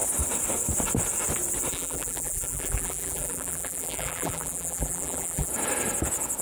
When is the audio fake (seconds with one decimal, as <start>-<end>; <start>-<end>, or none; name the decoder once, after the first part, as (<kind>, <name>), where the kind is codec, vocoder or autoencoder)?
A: 1.7-5.5 (vocoder, BigVGAN v2)